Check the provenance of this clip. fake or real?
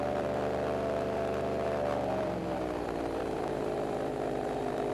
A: fake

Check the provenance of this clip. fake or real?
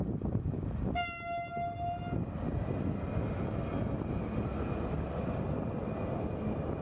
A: real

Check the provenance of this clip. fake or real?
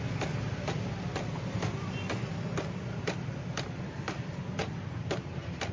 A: real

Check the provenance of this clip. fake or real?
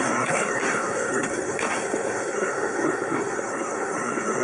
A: fake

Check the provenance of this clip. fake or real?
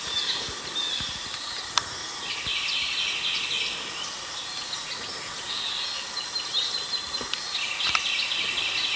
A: real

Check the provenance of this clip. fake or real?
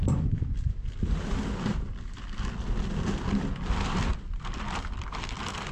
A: real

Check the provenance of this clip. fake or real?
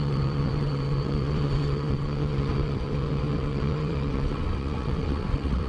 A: fake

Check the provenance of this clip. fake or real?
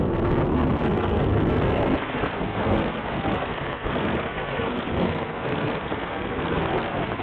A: fake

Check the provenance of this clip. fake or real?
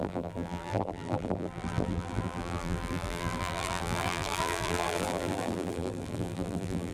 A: fake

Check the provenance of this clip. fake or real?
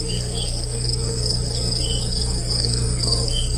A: fake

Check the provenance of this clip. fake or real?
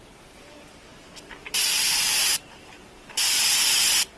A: real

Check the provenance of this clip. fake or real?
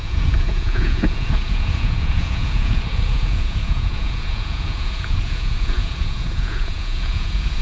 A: fake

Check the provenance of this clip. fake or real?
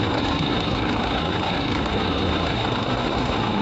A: fake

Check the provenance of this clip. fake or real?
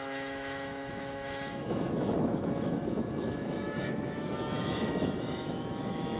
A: fake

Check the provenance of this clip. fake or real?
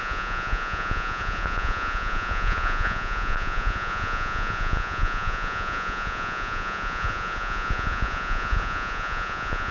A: fake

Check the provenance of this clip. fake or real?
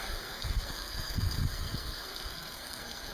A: fake